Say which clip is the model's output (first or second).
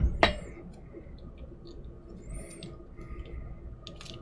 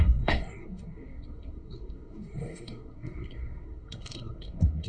second